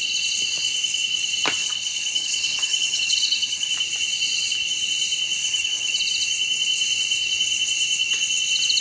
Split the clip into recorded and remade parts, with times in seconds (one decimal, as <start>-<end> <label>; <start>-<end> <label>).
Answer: 0.0-1.6 recorded; 1.6-3.7 remade; 3.7-5.4 recorded; 5.4-6.0 remade; 6.0-8.8 recorded